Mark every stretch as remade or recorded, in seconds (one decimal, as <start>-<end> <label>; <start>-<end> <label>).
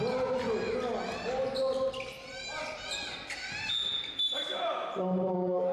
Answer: 0.0-5.7 recorded